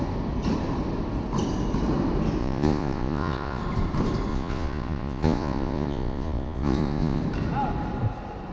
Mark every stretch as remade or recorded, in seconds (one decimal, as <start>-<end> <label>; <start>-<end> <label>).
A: 0.0-2.4 recorded; 2.4-3.6 remade; 3.6-4.3 recorded; 4.3-7.2 remade; 7.2-8.5 recorded